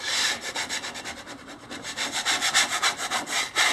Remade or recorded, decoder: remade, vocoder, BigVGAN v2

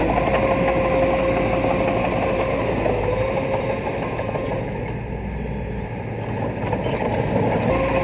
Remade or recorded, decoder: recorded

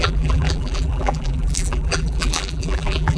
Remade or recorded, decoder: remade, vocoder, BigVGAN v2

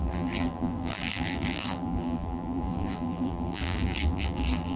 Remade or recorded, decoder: remade, vocoder, BigVGAN v2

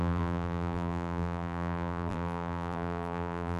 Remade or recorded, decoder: remade, vocoder, BigVGAN v2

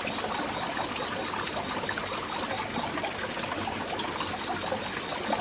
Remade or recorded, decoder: recorded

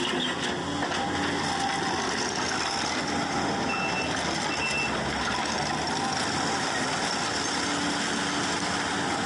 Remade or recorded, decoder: recorded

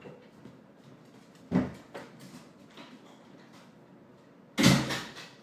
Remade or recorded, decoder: recorded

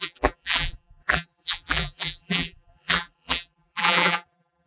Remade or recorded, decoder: remade, vocoder, BigVGAN v2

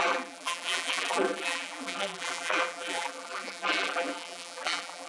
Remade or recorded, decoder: remade, vocoder, BigVGAN v2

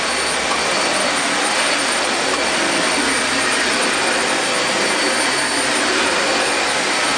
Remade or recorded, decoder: recorded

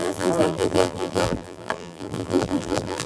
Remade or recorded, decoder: remade, vocoder, BigVGAN v2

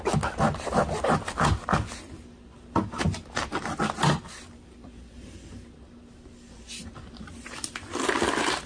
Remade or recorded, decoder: recorded